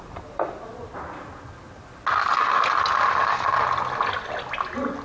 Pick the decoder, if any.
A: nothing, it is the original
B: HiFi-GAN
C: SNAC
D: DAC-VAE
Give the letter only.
A